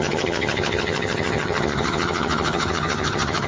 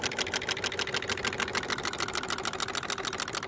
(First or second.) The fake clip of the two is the first